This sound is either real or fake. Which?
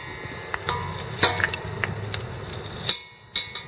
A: real